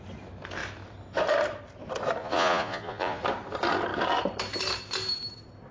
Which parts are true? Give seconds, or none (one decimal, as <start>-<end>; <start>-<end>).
0.0-2.2; 3.2-5.7